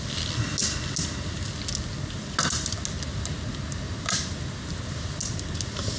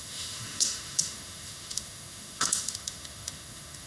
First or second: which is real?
first